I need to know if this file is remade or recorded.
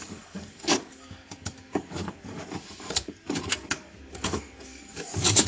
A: remade